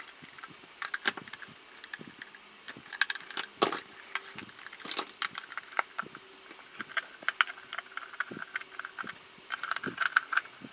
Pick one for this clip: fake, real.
real